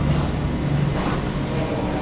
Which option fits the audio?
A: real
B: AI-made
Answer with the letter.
A